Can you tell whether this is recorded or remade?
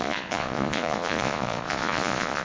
remade